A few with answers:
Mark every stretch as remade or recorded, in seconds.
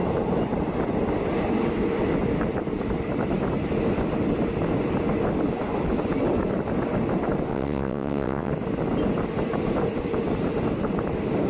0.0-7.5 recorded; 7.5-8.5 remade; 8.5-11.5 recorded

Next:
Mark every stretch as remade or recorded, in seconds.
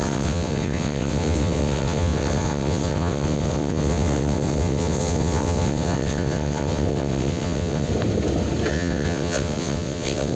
0.0-7.9 remade; 7.9-8.7 recorded; 8.7-10.4 remade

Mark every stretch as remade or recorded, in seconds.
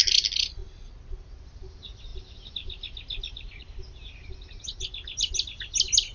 0.0-6.1 recorded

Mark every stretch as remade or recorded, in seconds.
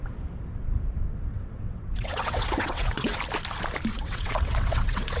0.0-1.3 recorded; 1.3-3.2 remade; 3.2-3.9 recorded; 3.9-5.2 remade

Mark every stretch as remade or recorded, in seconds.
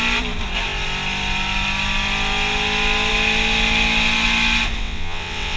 0.0-4.8 recorded; 4.8-5.6 remade